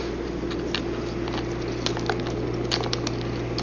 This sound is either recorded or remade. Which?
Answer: recorded